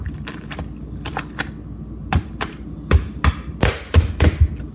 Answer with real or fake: real